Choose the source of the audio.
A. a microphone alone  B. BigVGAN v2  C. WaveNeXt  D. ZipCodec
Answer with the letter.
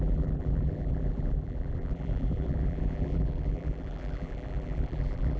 B